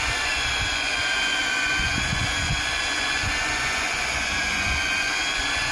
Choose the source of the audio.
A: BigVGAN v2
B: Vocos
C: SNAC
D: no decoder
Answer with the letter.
B